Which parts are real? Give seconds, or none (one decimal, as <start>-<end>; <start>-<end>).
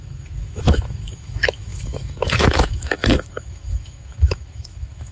none